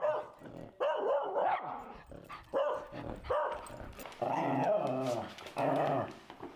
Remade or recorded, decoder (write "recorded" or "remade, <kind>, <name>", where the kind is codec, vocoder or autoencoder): recorded